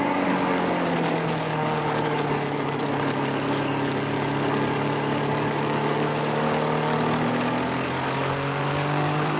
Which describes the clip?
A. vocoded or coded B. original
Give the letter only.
A